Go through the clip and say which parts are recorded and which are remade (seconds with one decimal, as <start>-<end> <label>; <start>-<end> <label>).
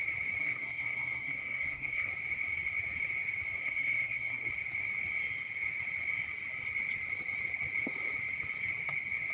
0.0-0.4 recorded; 0.4-2.1 remade; 2.1-3.6 recorded; 3.6-4.5 remade; 4.5-9.3 recorded